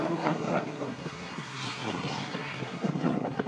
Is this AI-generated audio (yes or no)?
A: yes